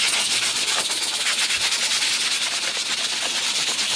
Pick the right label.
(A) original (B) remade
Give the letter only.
A